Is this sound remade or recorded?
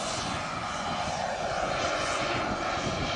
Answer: remade